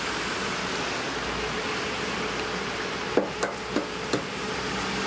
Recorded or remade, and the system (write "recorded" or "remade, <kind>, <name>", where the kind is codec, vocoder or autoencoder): recorded